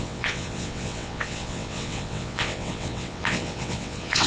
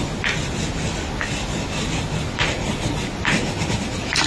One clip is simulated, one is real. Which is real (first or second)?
second